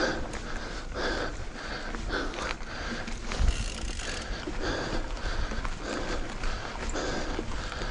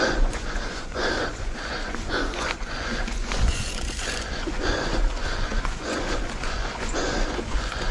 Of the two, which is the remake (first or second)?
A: second